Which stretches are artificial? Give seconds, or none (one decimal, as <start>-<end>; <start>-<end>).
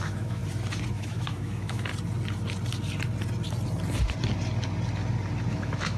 0.0-0.4; 0.9-1.9; 5.5-6.0